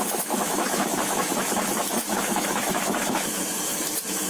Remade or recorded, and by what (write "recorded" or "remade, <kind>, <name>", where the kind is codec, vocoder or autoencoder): remade, autoencoder, DAC-VAE